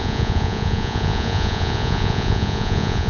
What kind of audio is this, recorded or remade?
remade